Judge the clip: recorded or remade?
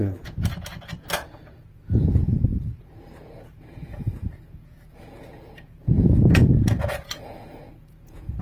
remade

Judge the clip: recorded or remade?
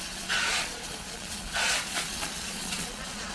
remade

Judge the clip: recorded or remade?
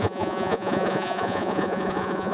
remade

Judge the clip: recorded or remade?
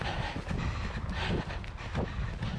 recorded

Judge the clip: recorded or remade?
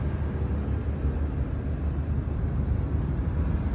recorded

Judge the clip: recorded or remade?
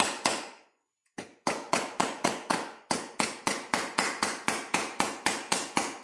remade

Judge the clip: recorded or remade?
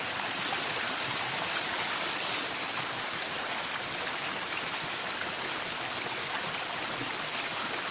recorded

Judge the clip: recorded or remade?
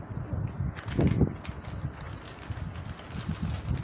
recorded